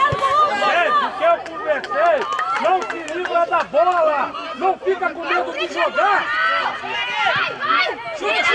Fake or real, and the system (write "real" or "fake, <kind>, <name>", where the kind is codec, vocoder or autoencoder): real